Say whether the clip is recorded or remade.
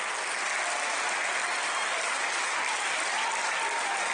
recorded